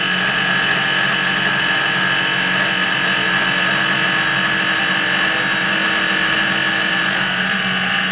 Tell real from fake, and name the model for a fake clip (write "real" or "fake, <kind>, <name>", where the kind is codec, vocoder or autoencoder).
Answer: real